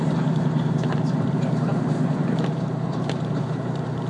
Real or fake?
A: fake